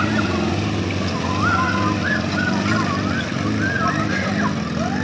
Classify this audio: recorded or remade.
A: recorded